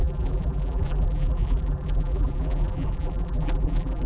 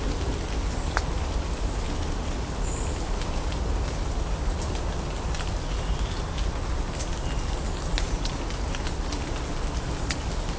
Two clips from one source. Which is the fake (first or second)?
first